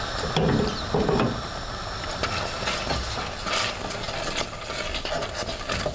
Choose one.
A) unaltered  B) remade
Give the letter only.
A